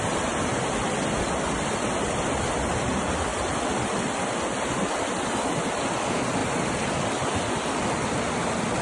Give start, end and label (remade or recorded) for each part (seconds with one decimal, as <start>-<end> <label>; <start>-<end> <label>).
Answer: 0.0-3.3 recorded; 3.3-5.7 remade; 5.7-8.8 recorded